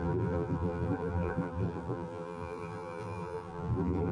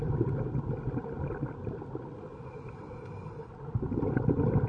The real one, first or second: second